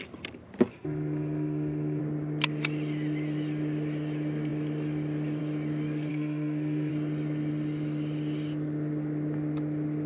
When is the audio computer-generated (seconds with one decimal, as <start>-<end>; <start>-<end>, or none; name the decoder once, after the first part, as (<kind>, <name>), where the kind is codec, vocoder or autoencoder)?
0.7-2.0 (codec, SNAC); 6.1-6.9